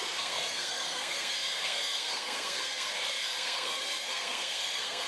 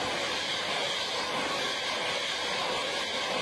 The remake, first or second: first